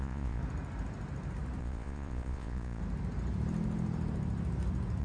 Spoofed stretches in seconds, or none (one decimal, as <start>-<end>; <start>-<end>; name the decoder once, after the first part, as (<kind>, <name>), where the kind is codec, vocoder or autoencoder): 0.0-0.4 (vocoder, Vocos); 1.6-2.8